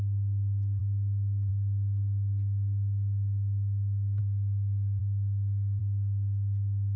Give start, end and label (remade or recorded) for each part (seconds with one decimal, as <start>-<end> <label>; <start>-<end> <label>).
0.0-7.0 recorded